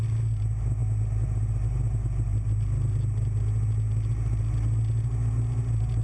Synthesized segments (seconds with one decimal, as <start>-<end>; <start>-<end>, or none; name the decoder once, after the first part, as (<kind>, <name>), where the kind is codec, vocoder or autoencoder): none